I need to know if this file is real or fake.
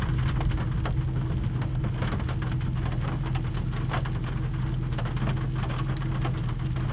real